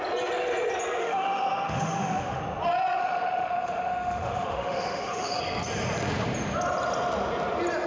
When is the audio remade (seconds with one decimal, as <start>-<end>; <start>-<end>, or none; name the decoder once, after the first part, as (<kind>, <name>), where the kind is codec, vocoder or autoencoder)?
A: 1.0-2.4 (autoencoder, DAC-VAE); 3.0-5.4